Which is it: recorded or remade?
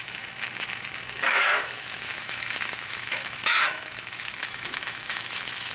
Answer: remade